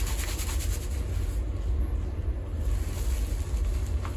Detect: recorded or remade recorded